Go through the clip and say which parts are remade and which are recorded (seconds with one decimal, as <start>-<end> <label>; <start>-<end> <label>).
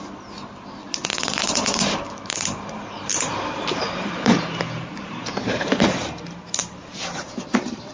0.0-1.1 recorded; 1.1-5.8 remade; 5.8-6.6 recorded; 6.6-7.9 remade